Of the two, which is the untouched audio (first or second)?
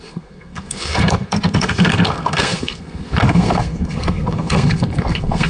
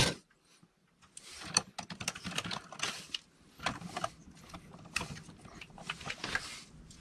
second